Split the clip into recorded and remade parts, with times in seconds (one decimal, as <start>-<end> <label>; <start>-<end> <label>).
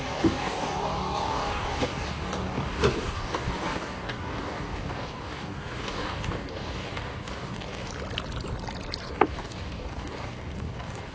0.0-7.9 remade; 7.9-9.0 recorded; 9.0-11.1 remade